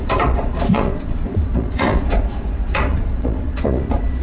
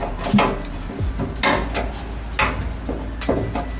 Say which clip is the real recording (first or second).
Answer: second